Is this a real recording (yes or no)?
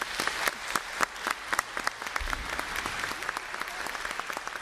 yes